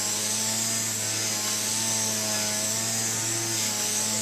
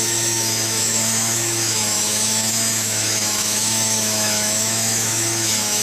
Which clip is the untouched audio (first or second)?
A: first